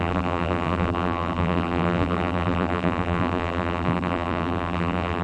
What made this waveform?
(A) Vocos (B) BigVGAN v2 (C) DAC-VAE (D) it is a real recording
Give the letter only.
B